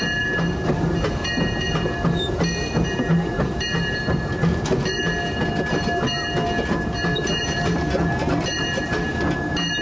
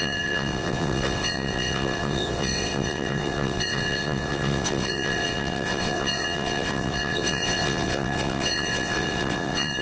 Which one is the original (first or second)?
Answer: first